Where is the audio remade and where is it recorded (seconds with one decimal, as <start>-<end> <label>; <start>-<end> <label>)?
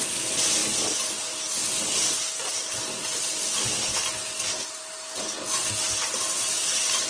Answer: 0.0-7.1 recorded